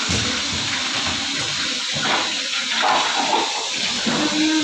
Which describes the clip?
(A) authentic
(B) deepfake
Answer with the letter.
A